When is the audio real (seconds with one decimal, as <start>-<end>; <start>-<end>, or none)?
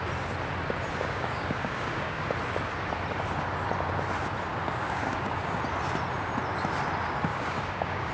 0.0-0.9; 2.3-4.5; 5.6-7.3